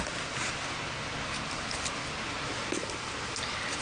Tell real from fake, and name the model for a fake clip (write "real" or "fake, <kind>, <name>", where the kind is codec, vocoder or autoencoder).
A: real